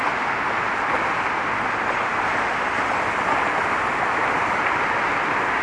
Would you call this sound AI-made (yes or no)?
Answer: no